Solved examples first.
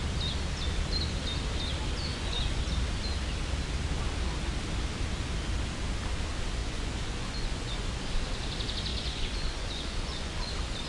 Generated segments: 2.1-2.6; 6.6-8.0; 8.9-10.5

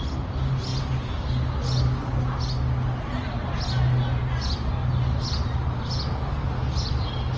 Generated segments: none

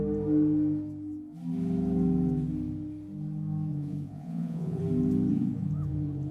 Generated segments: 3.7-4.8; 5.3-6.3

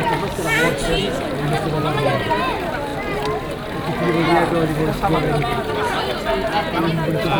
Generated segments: 0.8-1.3

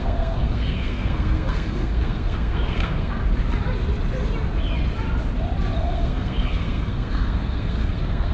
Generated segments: 0.0-3.2; 5.8-8.3

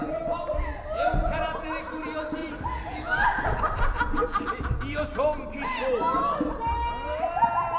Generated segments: 2.4-4.4

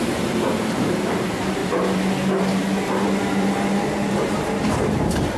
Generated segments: 0.0-1.6; 4.1-5.4

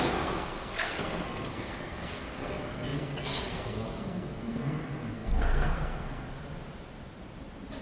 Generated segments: 0.0-6.4